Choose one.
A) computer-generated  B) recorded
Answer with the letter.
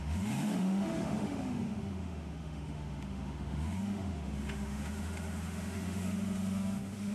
A